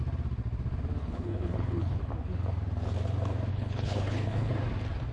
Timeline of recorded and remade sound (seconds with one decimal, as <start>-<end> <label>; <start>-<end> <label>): 0.0-1.0 recorded; 1.0-2.0 remade; 2.0-3.5 recorded; 3.5-4.5 remade; 4.5-5.1 recorded